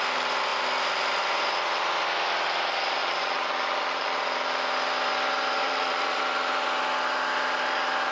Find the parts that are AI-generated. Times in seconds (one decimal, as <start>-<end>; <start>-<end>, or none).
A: 3.0-4.2; 5.6-6.2